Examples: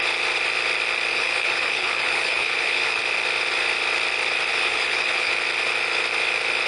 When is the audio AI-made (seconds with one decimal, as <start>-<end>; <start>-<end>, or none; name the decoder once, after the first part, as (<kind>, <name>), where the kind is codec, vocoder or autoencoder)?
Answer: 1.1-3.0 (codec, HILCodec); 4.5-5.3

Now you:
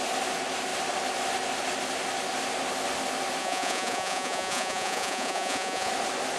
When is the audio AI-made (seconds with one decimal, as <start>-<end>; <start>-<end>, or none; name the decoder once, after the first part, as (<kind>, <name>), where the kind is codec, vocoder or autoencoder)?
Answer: 3.4-5.9 (vocoder, Vocos)

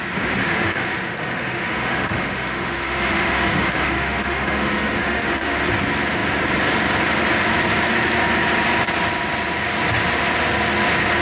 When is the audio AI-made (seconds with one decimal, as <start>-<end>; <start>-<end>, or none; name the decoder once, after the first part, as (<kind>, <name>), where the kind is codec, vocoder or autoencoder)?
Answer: 0.4-5.6 (autoencoder, DAC-VAE)